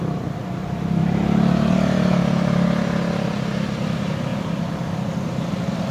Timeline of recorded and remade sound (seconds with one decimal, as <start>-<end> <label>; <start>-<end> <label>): 0.0-5.9 recorded